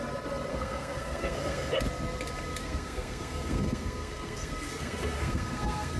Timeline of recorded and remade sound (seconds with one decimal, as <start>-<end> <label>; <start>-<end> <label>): 0.0-0.5 recorded; 0.5-1.7 remade; 1.7-2.6 recorded; 2.6-6.0 remade